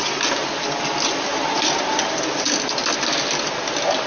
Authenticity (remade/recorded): recorded